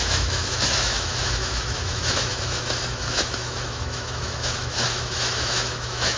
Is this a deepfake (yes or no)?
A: yes